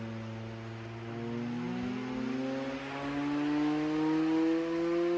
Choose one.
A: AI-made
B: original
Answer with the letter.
B